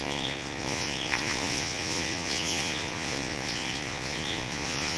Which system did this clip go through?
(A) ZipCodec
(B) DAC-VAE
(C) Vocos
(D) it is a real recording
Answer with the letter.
C